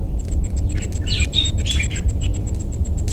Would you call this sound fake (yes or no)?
yes